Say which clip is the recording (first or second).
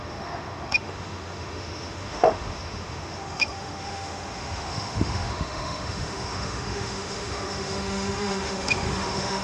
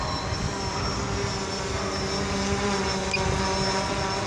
second